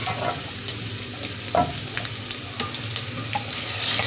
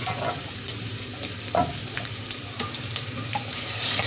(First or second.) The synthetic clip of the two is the second